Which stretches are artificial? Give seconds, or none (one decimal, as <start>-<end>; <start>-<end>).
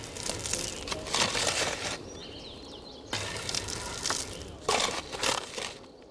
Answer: none